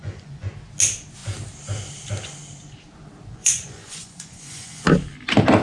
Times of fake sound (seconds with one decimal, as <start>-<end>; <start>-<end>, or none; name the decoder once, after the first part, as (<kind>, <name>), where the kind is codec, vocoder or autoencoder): 0.0-0.5 (vocoder, Vocos); 3.3-4.8